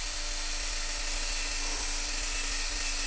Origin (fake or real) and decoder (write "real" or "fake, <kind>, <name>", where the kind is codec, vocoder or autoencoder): real